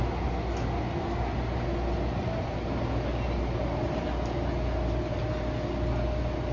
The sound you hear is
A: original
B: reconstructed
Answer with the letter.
A